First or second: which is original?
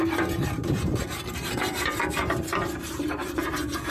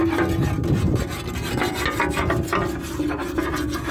second